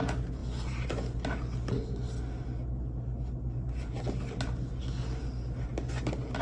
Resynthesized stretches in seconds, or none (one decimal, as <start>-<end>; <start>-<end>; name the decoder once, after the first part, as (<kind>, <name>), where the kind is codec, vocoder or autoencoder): none